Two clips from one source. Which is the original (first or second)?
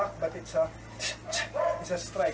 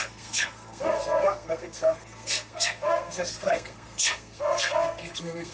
first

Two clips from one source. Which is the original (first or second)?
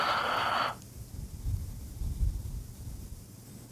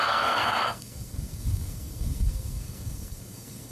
first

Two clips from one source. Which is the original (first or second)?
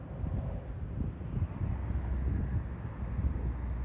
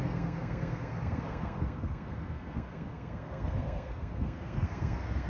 first